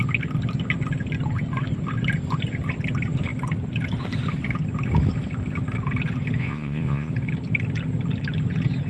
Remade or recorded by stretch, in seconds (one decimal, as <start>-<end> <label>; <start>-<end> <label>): 0.0-6.4 recorded; 6.4-7.1 remade; 7.1-8.9 recorded